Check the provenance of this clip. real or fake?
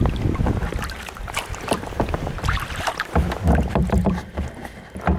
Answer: real